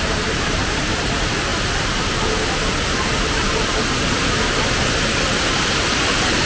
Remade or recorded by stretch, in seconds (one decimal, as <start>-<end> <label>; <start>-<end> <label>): 0.0-1.5 remade; 1.5-5.4 recorded; 5.4-6.5 remade